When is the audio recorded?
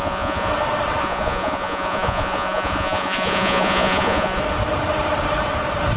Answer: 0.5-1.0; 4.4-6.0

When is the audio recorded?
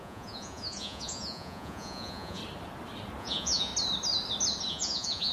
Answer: 2.4-3.2; 3.7-4.7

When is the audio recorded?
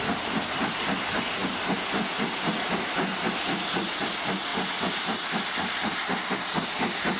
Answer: 0.0-7.2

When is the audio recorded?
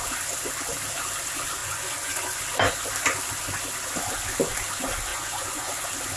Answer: 0.0-1.6; 2.4-5.1; 5.7-6.2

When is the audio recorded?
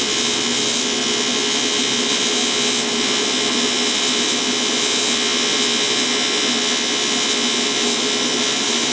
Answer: 0.0-8.9